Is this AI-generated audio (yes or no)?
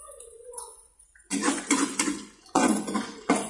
yes